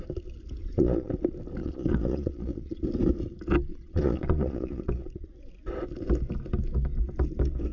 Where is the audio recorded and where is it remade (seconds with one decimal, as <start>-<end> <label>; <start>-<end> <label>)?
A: 0.0-0.6 recorded; 0.6-1.1 remade; 1.1-1.6 recorded; 1.6-2.8 remade; 2.8-3.7 recorded; 3.7-5.5 remade; 5.5-7.7 recorded